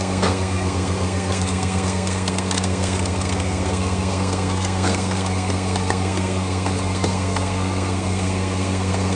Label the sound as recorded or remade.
remade